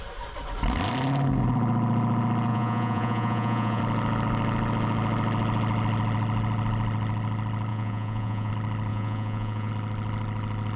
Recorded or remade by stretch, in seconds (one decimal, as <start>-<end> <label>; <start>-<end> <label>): 0.0-2.5 recorded; 2.5-3.8 remade; 3.8-7.7 recorded; 7.7-8.5 remade; 8.5-8.9 recorded; 8.9-9.7 remade; 9.7-10.8 recorded